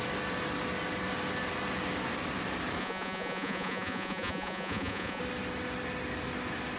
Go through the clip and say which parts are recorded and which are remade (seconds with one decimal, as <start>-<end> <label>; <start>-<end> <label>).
0.0-2.8 recorded; 2.8-5.2 remade; 5.2-6.8 recorded